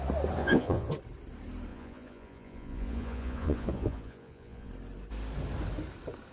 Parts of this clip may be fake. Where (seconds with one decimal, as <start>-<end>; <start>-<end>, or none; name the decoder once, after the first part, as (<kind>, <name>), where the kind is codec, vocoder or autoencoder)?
0.4-0.9 (vocoder, Vocos); 1.7-4.7